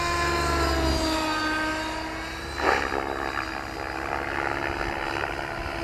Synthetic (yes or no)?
no